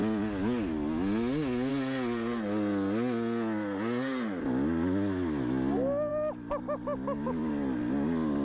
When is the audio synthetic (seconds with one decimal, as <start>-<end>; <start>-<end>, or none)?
none